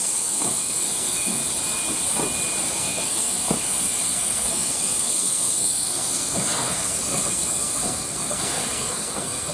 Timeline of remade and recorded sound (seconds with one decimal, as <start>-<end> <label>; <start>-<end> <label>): 0.0-1.4 remade; 1.4-2.7 recorded; 2.7-9.5 remade

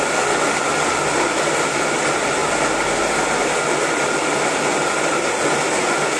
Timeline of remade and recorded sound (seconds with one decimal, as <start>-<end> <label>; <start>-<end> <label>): 0.0-6.2 recorded

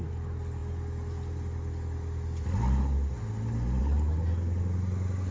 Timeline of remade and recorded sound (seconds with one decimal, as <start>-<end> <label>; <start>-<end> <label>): 0.0-5.3 recorded

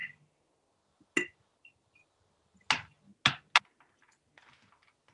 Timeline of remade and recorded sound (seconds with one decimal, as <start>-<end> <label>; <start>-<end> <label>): 0.0-5.1 recorded

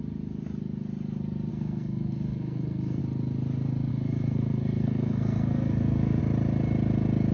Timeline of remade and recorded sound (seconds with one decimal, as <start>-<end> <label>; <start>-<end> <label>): 0.0-1.5 recorded; 1.5-3.0 remade; 3.0-3.9 recorded; 3.9-6.2 remade; 6.2-7.3 recorded

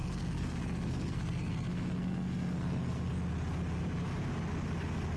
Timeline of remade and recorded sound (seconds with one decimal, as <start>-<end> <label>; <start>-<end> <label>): 0.0-3.1 remade; 3.1-5.2 recorded

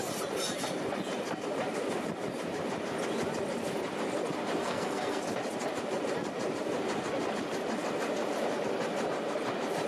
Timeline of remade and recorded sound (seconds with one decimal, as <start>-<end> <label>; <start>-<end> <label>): 0.0-4.6 recorded; 4.6-5.2 remade; 5.2-9.9 recorded

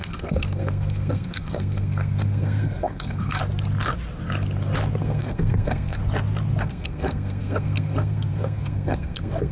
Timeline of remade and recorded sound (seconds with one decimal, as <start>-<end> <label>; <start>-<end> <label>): 0.0-3.4 remade; 3.4-5.0 recorded; 5.0-6.0 remade; 6.0-6.6 recorded; 6.6-9.5 remade